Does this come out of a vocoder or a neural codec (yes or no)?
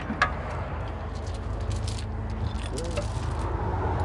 no